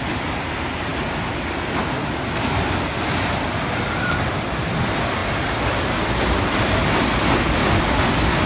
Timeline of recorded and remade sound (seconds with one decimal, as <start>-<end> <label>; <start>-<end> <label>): 0.0-8.5 recorded

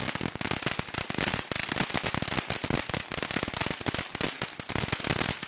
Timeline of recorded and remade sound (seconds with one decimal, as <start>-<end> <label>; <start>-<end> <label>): 0.0-5.5 recorded

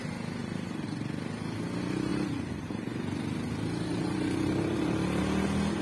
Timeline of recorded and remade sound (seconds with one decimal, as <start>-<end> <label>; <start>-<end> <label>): 0.0-0.4 recorded; 0.4-0.9 remade; 0.9-2.1 recorded; 2.1-5.2 remade; 5.2-5.8 recorded

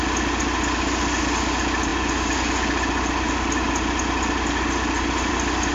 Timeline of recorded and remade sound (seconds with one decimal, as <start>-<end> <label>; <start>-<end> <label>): 0.0-5.7 recorded

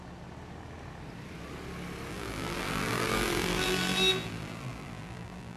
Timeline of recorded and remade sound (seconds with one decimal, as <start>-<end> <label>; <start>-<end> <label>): 0.0-2.1 recorded; 2.1-5.6 remade

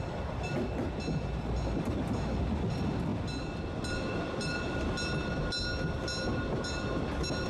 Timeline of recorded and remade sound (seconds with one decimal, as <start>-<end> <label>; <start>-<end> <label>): 0.0-7.5 recorded